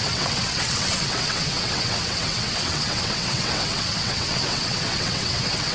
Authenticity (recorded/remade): remade